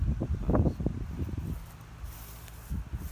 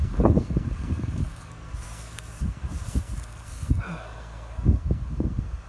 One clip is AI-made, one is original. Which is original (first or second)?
first